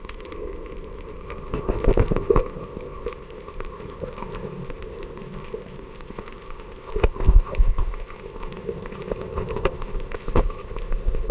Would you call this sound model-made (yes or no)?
yes